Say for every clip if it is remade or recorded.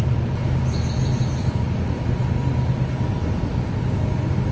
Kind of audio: recorded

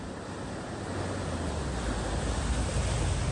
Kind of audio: recorded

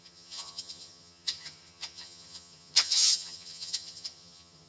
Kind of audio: remade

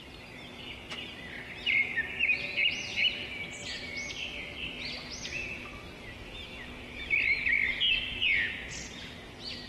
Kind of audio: recorded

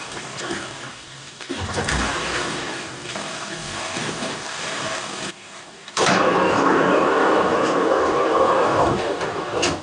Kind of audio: remade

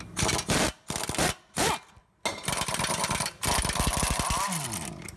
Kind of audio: recorded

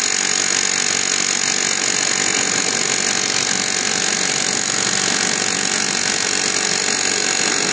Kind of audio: recorded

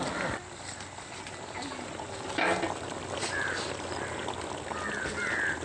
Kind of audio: recorded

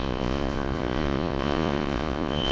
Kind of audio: remade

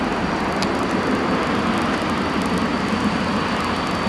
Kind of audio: recorded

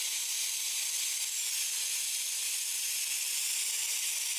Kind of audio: recorded